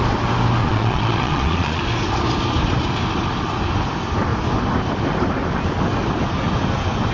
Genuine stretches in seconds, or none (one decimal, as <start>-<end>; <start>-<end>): 0.0-0.6; 1.8-7.1